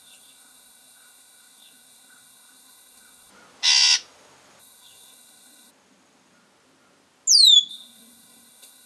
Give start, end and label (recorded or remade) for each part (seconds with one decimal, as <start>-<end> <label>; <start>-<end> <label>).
0.0-3.3 remade; 3.3-4.6 recorded; 4.6-5.7 remade; 5.7-7.7 recorded; 7.7-8.9 remade